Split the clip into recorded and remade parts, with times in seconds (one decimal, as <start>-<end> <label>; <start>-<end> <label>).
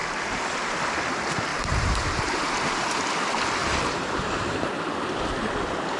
0.0-1.5 recorded; 1.5-3.0 remade; 3.0-3.6 recorded; 3.6-4.8 remade; 4.8-6.0 recorded